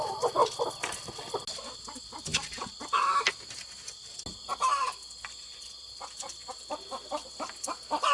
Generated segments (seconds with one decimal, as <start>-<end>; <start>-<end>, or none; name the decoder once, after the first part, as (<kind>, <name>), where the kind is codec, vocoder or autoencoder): none